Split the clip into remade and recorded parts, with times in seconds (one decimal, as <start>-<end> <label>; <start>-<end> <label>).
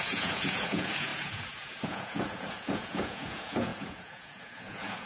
0.0-5.1 remade